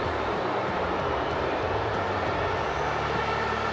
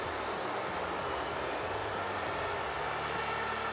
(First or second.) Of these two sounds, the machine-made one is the first